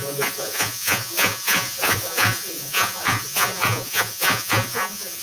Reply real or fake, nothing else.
fake